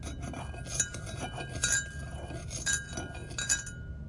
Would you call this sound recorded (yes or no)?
yes